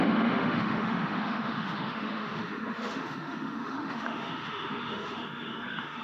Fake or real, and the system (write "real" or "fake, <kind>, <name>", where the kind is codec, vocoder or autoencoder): fake, autoencoder, DAC-VAE